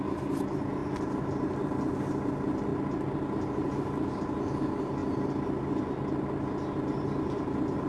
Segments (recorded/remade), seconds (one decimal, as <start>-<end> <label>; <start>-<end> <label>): 0.0-7.9 recorded